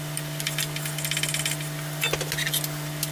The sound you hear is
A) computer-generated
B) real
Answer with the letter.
B